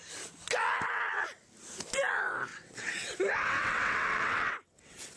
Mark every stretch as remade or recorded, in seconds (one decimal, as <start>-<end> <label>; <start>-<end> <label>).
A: 0.0-2.5 recorded; 2.5-5.2 remade